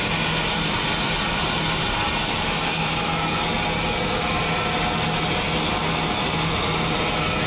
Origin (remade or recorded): recorded